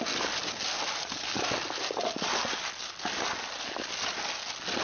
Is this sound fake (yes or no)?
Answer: no